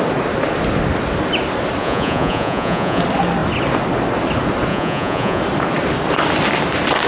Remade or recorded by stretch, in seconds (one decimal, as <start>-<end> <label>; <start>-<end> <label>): 0.0-1.8 recorded; 1.8-3.0 remade; 3.0-4.7 recorded; 4.7-5.4 remade; 5.4-7.1 recorded